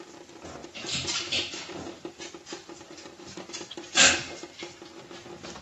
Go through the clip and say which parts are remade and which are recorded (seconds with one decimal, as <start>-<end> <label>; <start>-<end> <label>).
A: 0.0-0.6 recorded; 0.6-1.7 remade; 1.7-2.6 recorded; 2.6-4.1 remade; 4.1-5.6 recorded